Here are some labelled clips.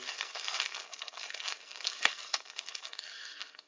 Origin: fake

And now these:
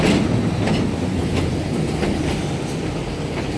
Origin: real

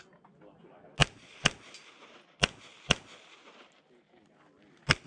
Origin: real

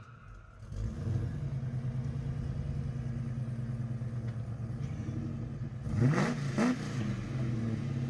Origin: real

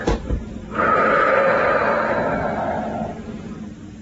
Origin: real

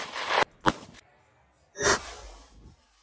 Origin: real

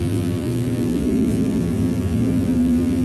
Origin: fake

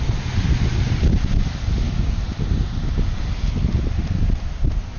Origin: real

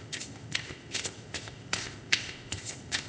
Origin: fake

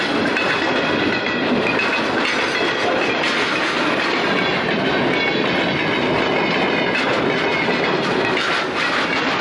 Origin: real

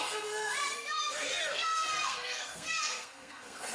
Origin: fake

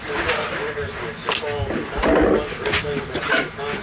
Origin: real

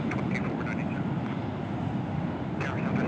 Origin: real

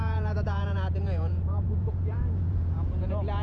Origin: fake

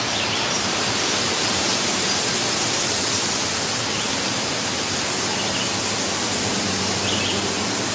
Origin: real